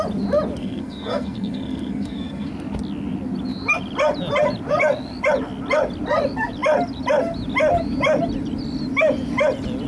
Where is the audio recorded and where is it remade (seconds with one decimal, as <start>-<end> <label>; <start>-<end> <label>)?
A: 0.0-0.6 recorded; 0.6-2.5 remade; 2.5-9.9 recorded